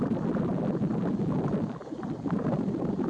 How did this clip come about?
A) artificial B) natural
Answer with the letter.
B